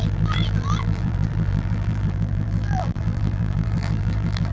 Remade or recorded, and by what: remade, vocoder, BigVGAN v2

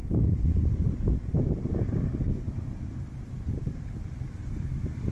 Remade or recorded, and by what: remade, vocoder, BigVGAN v2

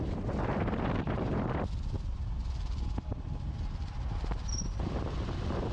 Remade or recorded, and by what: recorded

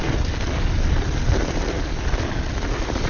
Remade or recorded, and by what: recorded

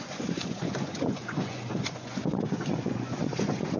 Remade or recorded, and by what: remade, vocoder, Vocos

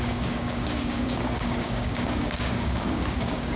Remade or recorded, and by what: remade, codec, DAC